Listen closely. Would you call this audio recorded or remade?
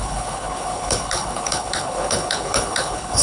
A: remade